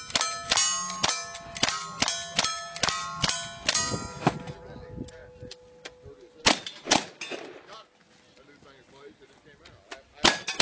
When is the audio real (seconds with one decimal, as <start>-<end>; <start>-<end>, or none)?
0.0-10.6